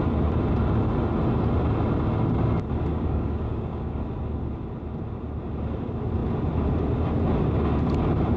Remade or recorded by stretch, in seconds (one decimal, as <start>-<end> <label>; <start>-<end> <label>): 0.0-2.9 recorded; 2.9-4.0 remade; 4.0-8.4 recorded